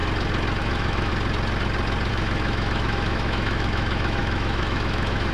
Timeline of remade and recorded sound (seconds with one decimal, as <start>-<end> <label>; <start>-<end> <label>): 0.0-0.6 recorded; 0.6-1.1 remade; 1.1-2.1 recorded; 2.1-5.3 remade